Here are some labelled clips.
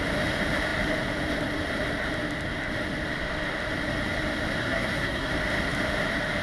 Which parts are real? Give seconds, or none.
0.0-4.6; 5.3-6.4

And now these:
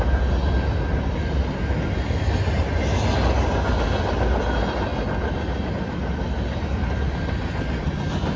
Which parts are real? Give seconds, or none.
0.0-8.4

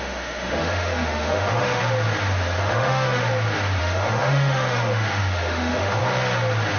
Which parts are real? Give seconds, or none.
1.8-2.6; 3.2-3.8; 6.0-6.8

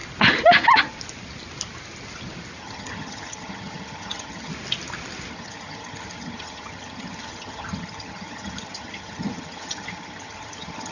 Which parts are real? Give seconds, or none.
0.0-2.6; 4.5-5.3

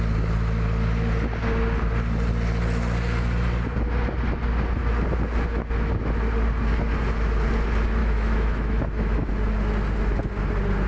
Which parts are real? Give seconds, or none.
0.0-8.0; 9.3-10.9

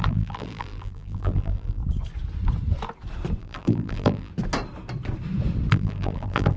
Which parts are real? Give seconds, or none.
1.8-3.4; 4.3-5.7

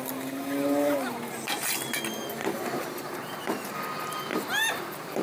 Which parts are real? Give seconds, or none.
0.0-2.4; 3.7-4.3; 4.8-5.2